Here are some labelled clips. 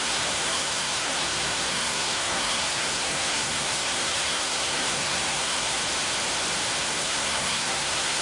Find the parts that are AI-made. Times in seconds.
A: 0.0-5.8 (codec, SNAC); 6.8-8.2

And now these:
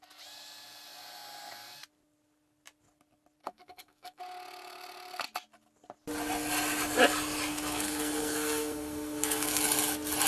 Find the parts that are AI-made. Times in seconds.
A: 3.4-4.2 (codec, SNAC); 7.5-9.6

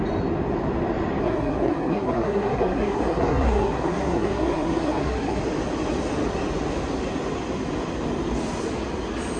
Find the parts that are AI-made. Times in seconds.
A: 1.2-5.4 (codec, SNAC)